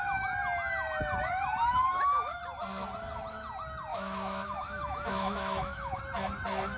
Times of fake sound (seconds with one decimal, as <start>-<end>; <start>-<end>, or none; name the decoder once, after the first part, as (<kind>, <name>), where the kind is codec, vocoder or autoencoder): 1.6-2.4 (autoencoder, DAC-VAE); 3.9-6.0